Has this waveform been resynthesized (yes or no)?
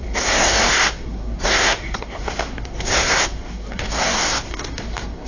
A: yes